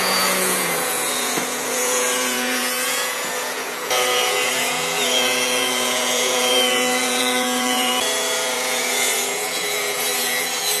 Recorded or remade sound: remade